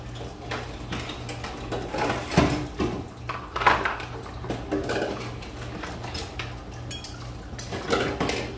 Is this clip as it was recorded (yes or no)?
yes